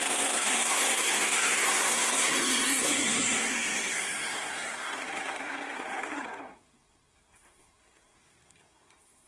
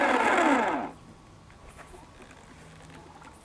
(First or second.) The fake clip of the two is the first